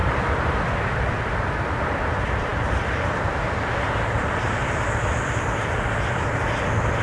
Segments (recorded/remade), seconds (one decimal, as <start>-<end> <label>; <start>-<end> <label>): 0.0-1.4 remade; 1.4-2.5 recorded; 2.5-6.3 remade; 6.3-7.0 recorded